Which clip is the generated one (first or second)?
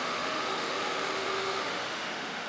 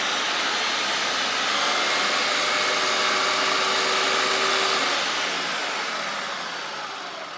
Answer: first